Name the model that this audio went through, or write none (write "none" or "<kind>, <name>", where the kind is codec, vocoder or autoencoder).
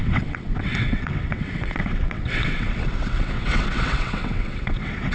vocoder, WaveNeXt